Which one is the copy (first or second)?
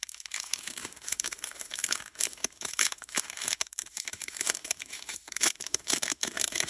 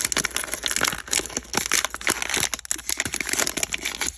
first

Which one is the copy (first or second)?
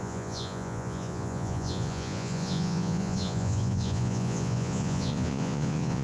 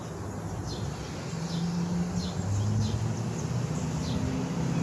first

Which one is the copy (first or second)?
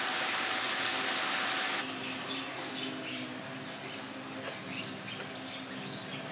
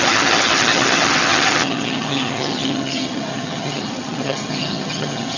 second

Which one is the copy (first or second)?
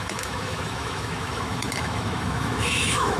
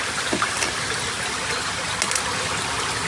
first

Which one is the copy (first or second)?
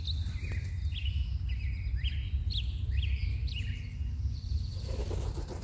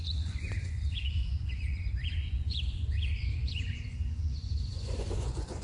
second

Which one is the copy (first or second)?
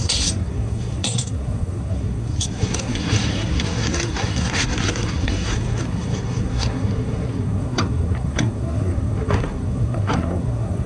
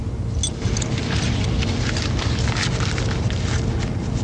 first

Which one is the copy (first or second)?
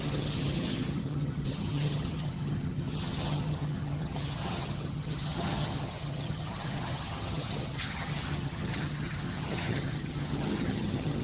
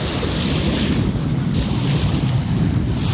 first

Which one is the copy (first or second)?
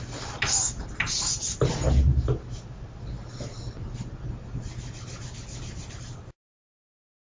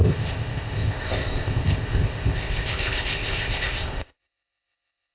second